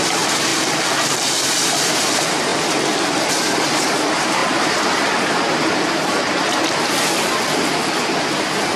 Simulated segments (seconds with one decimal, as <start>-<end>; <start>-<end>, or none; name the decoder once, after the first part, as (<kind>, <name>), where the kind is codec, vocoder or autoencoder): none